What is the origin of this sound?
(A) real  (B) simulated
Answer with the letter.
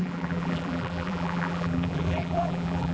B